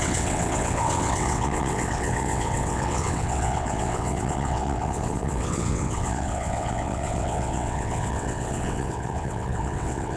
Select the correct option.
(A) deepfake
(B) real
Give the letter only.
A